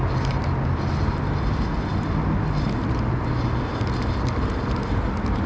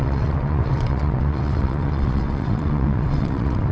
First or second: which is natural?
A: first